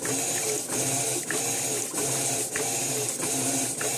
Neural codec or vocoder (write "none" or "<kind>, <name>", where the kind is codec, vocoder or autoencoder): none